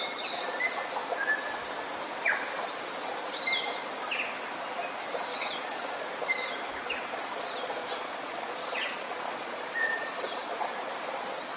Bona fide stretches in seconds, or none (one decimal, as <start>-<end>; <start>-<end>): 0.0-5.3; 6.1-7.8; 10.5-11.6